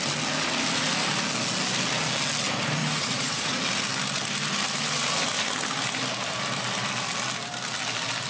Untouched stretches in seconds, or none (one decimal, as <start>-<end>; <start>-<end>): 0.0-2.8; 3.6-8.3